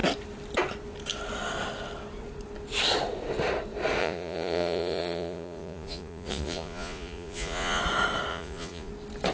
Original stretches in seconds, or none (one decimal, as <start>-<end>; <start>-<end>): 0.0-4.0; 7.8-8.3; 8.9-9.3